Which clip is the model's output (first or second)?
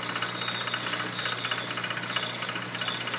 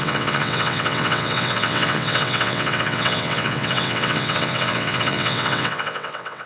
second